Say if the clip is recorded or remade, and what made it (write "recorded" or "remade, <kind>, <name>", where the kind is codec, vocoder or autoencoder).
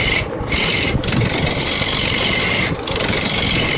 recorded